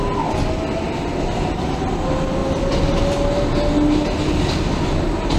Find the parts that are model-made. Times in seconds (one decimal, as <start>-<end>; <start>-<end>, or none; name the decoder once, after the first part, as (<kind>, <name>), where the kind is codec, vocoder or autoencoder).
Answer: 2.4-3.0 (vocoder, BigVGAN v2)